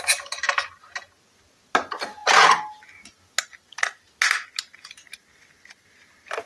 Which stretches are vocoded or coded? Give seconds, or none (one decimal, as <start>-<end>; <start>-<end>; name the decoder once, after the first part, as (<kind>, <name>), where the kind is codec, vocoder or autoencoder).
none